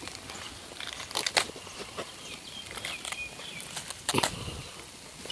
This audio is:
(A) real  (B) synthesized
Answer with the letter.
A